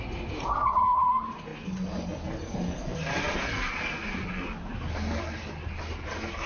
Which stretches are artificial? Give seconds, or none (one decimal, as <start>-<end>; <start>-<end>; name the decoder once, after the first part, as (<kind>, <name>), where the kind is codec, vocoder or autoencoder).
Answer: none